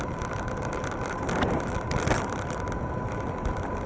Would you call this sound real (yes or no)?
yes